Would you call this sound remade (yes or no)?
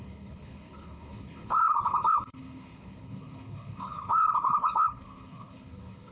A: yes